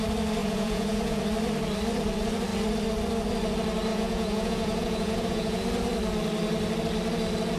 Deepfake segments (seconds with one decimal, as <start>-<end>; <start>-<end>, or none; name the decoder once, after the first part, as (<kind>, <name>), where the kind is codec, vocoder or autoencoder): 0.4-1.2 (vocoder, Vocos); 3.9-5.6